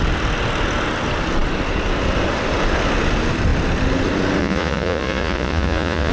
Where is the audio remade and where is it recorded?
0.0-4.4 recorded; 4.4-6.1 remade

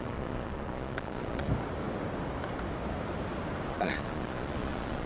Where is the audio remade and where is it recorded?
0.0-1.5 remade; 1.5-3.7 recorded; 3.7-5.1 remade

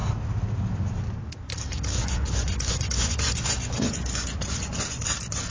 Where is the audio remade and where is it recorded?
0.0-2.0 recorded; 2.0-5.5 remade

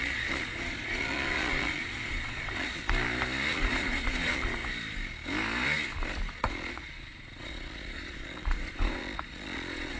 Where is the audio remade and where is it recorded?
0.0-2.8 remade; 2.8-3.5 recorded; 3.5-4.6 remade; 4.6-6.4 recorded; 6.4-10.0 remade

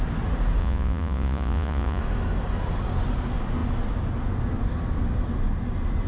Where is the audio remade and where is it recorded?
0.0-0.6 recorded; 0.6-2.0 remade; 2.0-6.1 recorded

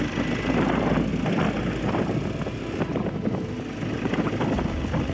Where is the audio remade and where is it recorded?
0.0-5.1 recorded

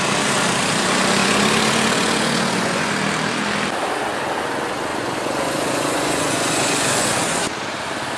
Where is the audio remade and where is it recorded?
0.0-1.2 recorded; 1.2-2.9 remade; 2.9-4.9 recorded; 4.9-7.5 remade; 7.5-8.2 recorded